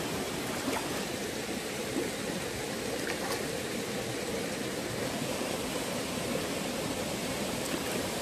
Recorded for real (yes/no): no